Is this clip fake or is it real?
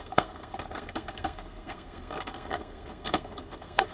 fake